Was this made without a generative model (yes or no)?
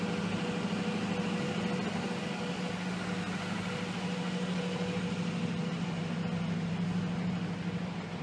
yes